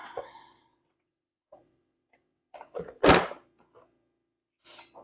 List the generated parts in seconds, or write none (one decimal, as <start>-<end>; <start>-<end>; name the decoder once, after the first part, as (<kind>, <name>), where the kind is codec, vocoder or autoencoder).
0.0-3.0 (vocoder, WaveNeXt)